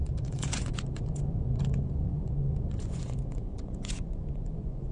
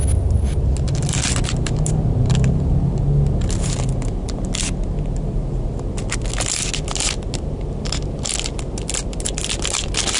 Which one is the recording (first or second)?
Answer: second